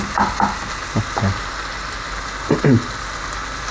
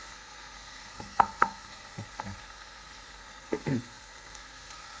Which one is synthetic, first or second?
second